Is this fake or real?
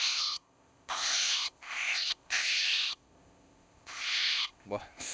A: fake